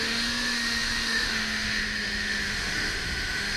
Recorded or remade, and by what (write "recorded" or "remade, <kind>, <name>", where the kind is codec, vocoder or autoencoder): remade, autoencoder, DAC-VAE